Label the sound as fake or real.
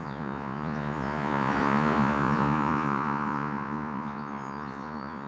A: fake